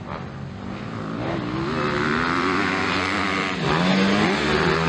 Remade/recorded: recorded